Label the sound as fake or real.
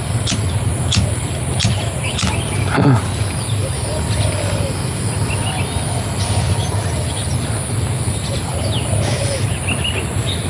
real